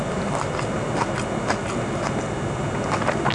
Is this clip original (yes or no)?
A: yes